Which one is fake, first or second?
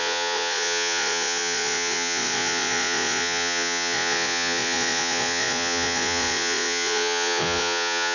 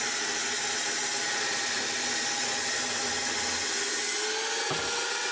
first